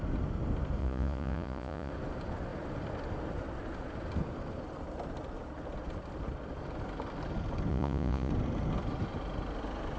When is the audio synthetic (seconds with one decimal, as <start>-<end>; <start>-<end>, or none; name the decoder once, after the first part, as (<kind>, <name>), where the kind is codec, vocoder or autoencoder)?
0.8-1.9 (vocoder, Vocos); 7.7-8.3